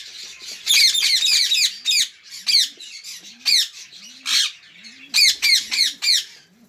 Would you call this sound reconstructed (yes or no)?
no